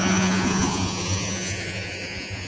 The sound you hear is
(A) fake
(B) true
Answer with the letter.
A